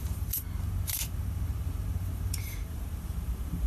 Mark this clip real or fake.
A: fake